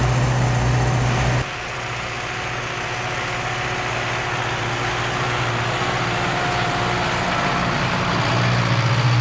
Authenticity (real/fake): real